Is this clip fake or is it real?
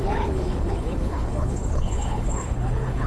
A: fake